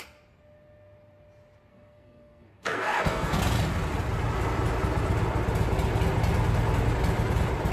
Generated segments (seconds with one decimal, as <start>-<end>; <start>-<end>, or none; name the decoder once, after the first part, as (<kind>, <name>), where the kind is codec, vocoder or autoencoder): 1.7-3.4 (codec, SNAC)